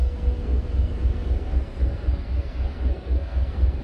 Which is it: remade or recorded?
remade